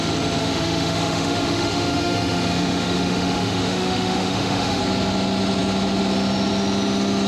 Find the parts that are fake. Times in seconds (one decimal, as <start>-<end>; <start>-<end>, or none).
0.4-4.8